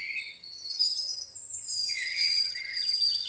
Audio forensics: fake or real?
fake